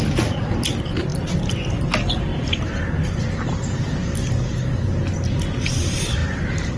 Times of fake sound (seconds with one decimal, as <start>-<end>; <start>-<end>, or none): none